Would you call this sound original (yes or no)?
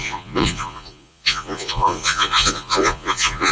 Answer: no